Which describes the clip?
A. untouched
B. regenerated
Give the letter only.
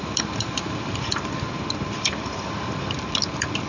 B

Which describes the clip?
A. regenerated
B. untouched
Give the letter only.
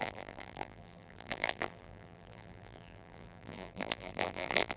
A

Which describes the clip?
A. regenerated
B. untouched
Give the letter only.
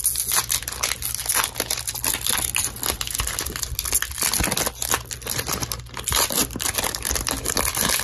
B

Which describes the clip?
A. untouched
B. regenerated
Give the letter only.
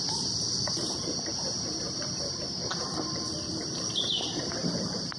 B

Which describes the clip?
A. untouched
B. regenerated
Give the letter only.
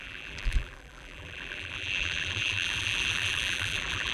B